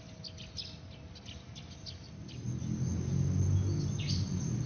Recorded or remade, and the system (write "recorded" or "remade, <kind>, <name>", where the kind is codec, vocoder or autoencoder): recorded